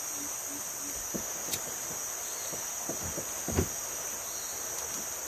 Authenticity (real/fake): real